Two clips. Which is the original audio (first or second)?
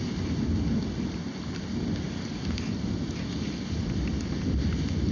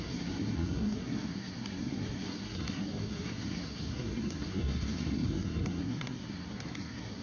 first